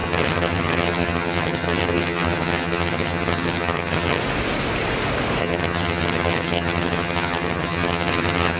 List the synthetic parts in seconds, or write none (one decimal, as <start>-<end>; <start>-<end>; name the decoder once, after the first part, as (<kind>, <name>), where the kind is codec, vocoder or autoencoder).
0.0-4.2 (vocoder, HiFi-GAN); 5.4-8.6